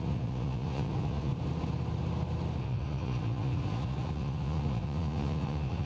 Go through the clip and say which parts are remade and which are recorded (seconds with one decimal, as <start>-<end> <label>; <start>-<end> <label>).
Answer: 0.0-1.3 remade; 1.3-2.6 recorded; 2.6-5.9 remade